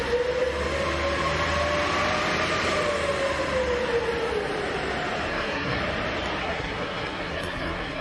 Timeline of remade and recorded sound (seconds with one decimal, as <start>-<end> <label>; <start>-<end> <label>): 0.0-5.3 recorded; 5.3-5.8 remade; 5.8-6.4 recorded; 6.4-8.0 remade